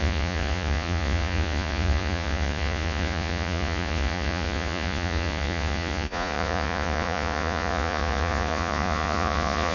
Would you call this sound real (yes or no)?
no